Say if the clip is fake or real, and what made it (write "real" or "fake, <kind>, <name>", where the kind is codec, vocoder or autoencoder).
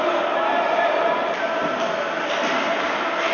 real